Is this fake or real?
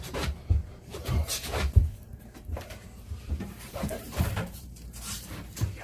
fake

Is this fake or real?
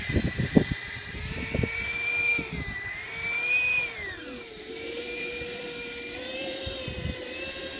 fake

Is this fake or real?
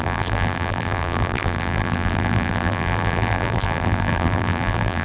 fake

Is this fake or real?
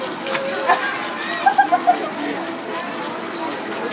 real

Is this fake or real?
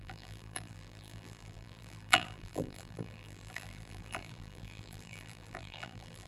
fake